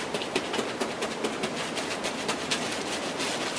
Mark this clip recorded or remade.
recorded